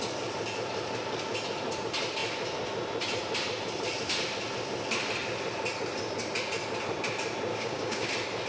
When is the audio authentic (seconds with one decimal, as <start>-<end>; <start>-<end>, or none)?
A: 0.0-7.5; 8.1-8.5